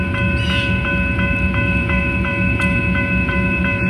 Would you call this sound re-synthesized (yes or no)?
yes